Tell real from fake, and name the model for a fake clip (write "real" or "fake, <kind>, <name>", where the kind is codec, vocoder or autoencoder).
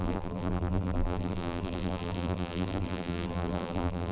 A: fake, vocoder, BigVGAN v2